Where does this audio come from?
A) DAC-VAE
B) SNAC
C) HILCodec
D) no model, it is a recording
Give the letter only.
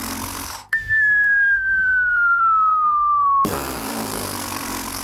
B